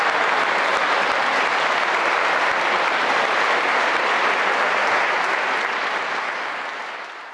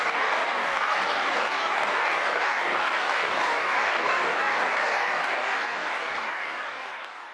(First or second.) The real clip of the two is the first